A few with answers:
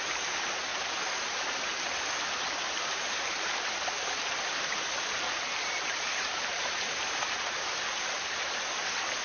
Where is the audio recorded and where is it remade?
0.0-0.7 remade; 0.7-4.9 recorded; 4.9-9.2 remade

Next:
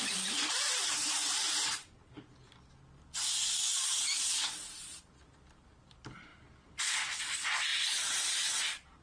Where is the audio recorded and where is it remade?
0.0-1.2 remade; 1.2-3.0 recorded; 3.0-6.3 remade; 6.3-7.2 recorded; 7.2-7.7 remade; 7.7-9.0 recorded

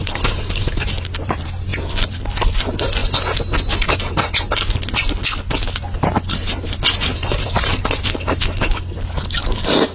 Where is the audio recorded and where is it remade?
0.0-9.9 recorded

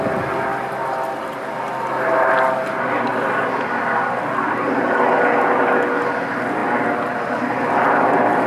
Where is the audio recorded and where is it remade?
0.0-6.6 recorded; 6.6-7.6 remade; 7.6-8.5 recorded